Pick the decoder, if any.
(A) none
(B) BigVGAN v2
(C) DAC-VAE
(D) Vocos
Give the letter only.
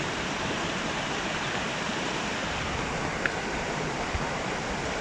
A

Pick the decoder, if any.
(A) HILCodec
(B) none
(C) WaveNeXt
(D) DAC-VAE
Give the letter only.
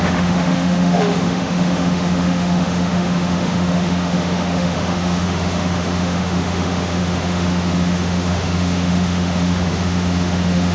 D